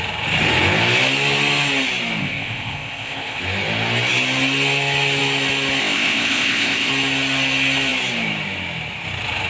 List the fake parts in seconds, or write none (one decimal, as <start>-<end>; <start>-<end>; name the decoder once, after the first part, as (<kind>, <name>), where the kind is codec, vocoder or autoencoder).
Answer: 2.2-3.4 (codec, ZipCodec); 5.8-6.9